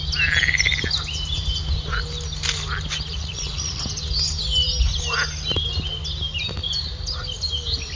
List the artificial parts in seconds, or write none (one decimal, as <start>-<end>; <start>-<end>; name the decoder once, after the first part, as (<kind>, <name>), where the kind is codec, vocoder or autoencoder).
3.1-3.8 (vocoder, Vocos)